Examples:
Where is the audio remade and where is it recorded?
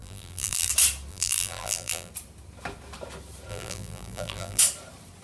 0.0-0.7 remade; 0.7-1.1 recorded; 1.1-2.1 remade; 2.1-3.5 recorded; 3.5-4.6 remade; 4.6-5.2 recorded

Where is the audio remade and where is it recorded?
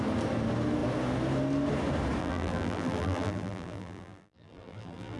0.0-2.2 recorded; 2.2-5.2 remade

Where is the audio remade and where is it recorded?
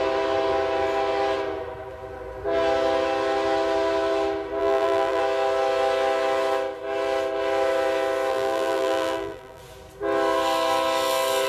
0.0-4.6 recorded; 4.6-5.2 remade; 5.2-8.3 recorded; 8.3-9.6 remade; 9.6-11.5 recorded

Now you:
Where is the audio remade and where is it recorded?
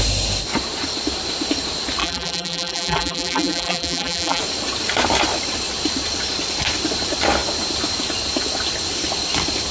0.0-2.0 recorded; 2.0-4.4 remade; 4.4-9.7 recorded